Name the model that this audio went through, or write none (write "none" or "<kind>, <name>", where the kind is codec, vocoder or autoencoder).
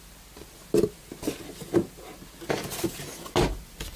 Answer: none